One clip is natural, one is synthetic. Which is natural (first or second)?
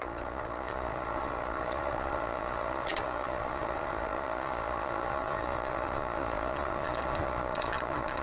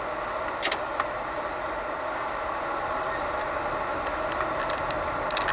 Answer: second